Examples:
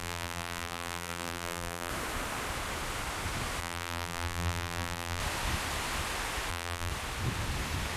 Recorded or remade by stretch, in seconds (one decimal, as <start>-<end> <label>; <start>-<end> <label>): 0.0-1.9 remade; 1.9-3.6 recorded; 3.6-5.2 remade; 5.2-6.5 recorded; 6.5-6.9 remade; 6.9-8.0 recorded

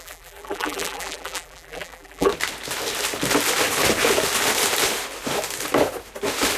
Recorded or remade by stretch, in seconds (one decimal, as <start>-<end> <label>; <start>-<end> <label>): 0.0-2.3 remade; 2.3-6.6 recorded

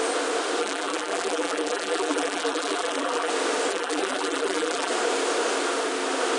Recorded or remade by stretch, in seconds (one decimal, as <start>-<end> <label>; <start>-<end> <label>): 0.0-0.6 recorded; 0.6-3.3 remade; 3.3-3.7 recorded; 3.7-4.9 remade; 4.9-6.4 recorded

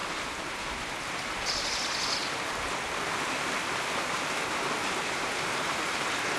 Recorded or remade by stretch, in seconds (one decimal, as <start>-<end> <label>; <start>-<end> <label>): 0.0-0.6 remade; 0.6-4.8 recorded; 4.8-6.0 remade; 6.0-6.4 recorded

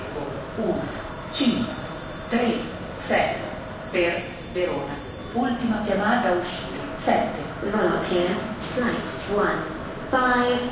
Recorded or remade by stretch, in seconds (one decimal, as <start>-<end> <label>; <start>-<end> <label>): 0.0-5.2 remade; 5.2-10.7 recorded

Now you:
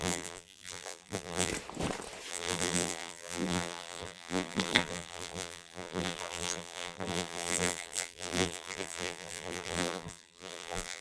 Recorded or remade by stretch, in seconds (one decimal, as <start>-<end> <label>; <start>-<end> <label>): 0.0-1.5 remade; 1.5-2.3 recorded; 2.3-11.0 remade

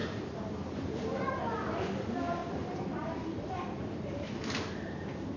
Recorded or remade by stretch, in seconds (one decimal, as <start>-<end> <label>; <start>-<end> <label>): 0.0-1.4 remade; 1.4-2.4 recorded; 2.4-4.4 remade; 4.4-5.4 recorded